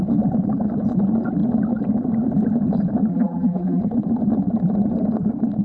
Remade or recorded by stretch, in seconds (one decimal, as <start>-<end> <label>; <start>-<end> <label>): 0.0-3.1 recorded; 3.1-3.8 remade; 3.8-5.6 recorded